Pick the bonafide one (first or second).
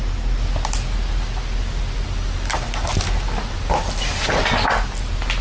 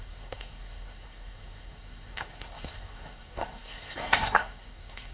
first